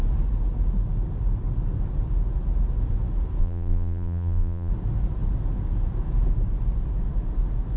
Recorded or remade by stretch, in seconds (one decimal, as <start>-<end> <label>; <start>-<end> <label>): 0.0-3.4 recorded; 3.4-4.7 remade; 4.7-7.8 recorded